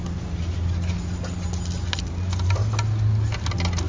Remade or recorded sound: recorded